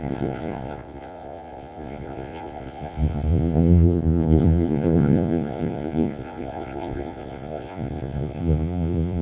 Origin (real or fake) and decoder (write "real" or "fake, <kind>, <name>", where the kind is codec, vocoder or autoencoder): fake, vocoder, Vocos